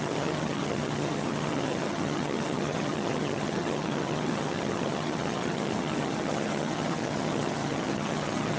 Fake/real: fake